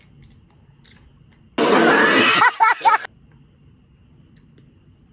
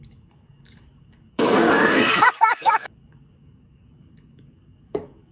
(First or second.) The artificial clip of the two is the second